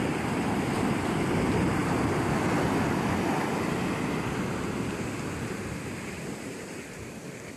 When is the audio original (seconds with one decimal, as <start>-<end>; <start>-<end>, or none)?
0.0-7.6